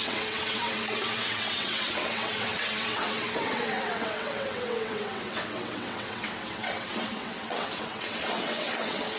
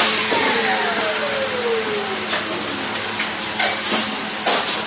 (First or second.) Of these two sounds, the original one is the second